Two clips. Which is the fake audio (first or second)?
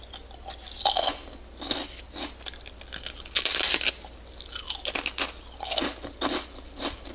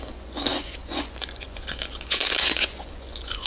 second